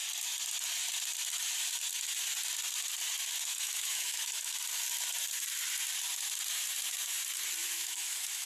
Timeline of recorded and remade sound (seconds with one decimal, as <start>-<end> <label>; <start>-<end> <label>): 0.0-3.5 recorded; 3.5-4.5 remade; 4.5-7.6 recorded; 7.6-8.5 remade